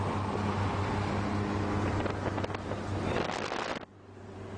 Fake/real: real